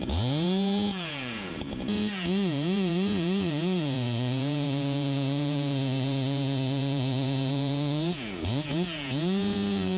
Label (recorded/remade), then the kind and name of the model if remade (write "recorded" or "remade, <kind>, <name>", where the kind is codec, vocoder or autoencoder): remade, vocoder, Vocos